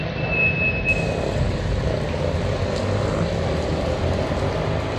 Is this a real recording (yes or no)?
yes